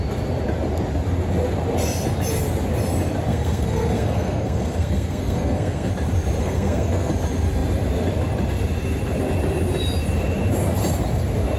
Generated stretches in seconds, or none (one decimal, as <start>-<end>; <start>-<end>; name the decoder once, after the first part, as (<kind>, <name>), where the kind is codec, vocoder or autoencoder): 3.3-5.9 (codec, SNAC); 6.4-7.1